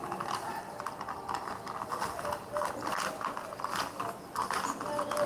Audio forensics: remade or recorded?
recorded